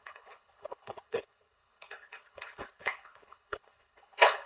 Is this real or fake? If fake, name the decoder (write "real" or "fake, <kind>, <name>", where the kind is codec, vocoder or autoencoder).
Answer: fake, codec, HILCodec